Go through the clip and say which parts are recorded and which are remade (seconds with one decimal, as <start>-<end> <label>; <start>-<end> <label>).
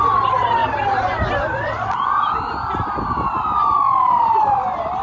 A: 0.0-0.6 recorded; 0.6-3.6 remade; 3.6-5.0 recorded